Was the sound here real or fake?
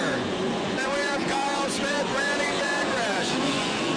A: fake